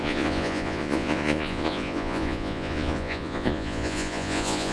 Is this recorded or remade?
remade